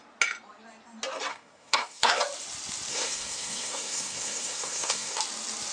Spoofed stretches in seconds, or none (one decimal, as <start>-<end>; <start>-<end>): 1.3-2.2; 2.9-5.2